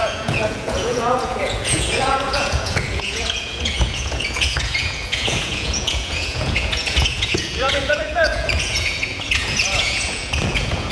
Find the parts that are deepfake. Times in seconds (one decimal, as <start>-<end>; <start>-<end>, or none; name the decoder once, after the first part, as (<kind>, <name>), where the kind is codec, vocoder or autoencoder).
0.0-10.9 (vocoder, Vocos)